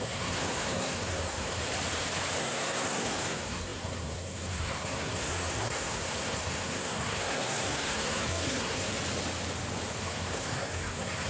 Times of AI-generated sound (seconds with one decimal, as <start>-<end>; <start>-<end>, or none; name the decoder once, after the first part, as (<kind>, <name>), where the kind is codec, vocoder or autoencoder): 0.0-1.6 (codec, SNAC); 2.4-8.9; 10.0-11.3